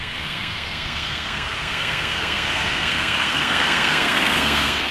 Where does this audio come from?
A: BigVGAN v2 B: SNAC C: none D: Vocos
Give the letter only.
B